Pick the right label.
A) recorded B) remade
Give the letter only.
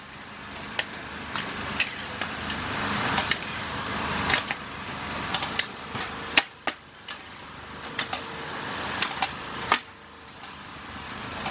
B